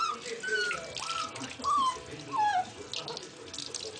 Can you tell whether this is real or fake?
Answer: real